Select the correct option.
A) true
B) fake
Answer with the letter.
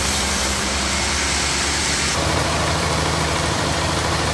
B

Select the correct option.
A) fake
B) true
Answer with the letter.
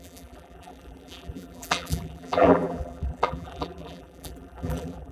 A